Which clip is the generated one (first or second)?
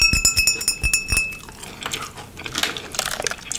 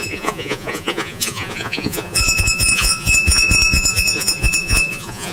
second